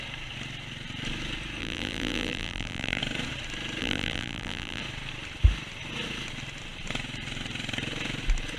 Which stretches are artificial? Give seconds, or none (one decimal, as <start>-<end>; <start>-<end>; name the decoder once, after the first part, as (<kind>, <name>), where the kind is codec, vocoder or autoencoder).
1.6-3.0 (vocoder, BigVGAN v2); 3.8-4.8